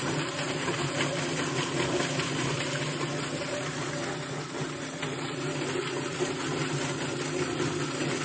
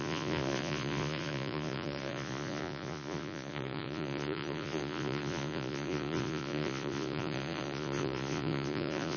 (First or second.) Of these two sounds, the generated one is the second